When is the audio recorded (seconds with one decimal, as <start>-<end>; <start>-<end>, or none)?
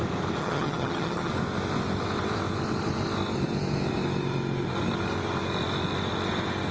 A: 0.0-0.4; 1.3-6.7